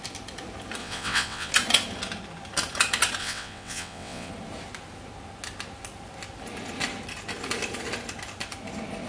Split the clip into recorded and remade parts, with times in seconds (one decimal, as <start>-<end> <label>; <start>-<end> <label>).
0.0-0.8 recorded; 0.8-1.5 remade; 1.5-3.2 recorded; 3.2-4.3 remade; 4.3-9.1 recorded